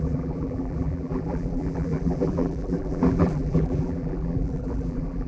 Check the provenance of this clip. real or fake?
fake